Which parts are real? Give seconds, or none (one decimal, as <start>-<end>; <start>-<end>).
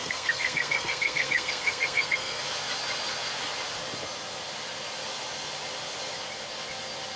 2.4-7.2